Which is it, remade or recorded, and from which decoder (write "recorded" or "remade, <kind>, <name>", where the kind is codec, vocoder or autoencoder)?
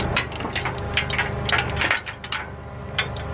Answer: recorded